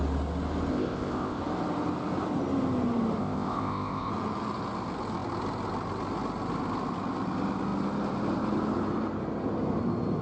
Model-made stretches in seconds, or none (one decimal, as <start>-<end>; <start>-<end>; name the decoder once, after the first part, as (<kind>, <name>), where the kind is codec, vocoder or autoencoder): 0.7-1.4 (codec, ZipCodec); 3.2-4.1